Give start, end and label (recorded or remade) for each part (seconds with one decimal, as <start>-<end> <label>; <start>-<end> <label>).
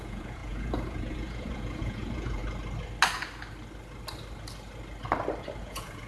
0.0-2.4 remade; 2.4-5.6 recorded; 5.6-6.1 remade